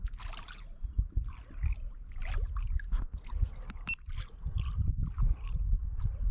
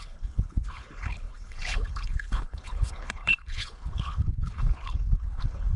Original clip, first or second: first